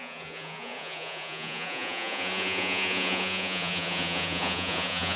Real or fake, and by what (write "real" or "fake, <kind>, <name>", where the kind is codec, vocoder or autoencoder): fake, vocoder, Vocos